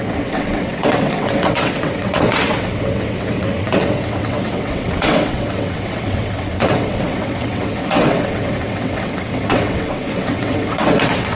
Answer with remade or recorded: remade